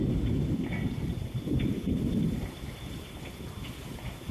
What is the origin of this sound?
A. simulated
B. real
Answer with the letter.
B